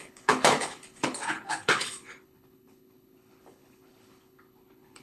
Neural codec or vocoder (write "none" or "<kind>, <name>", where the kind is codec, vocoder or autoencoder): codec, HILCodec